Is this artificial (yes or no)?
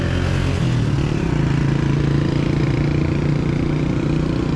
no